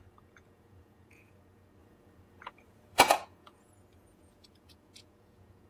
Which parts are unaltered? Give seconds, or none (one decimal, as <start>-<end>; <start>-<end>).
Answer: none